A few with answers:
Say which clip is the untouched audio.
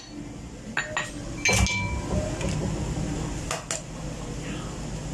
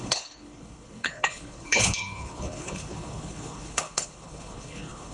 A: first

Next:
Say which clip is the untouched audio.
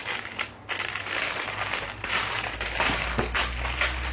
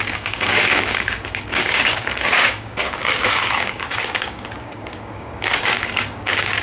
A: first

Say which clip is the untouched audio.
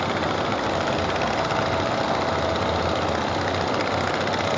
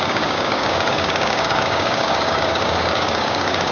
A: first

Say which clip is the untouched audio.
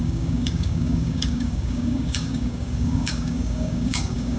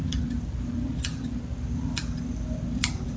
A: second